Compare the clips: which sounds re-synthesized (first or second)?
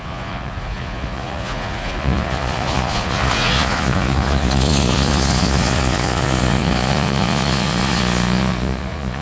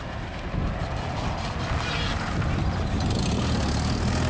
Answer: first